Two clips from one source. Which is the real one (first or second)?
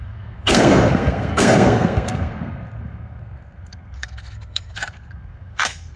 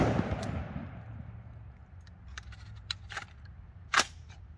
second